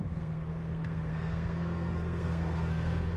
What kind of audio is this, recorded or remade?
remade